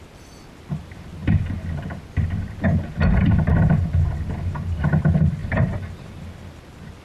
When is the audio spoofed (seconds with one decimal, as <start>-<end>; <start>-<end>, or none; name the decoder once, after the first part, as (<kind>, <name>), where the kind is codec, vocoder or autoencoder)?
5.4-6.2 (vocoder, BigVGAN v2)